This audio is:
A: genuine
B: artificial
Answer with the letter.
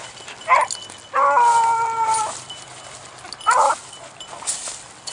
A